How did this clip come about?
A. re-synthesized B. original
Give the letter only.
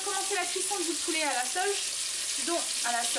B